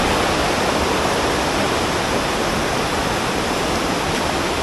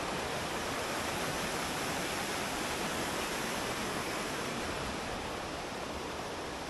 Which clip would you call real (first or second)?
first